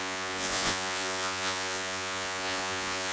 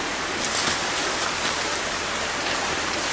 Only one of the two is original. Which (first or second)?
second